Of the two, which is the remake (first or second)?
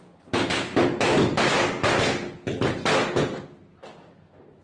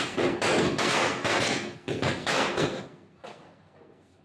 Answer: second